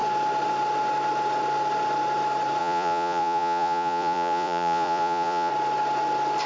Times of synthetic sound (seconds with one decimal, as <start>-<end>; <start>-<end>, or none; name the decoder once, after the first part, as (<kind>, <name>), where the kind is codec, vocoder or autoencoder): 2.6-5.5 (vocoder, Vocos)